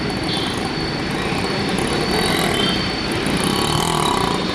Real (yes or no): no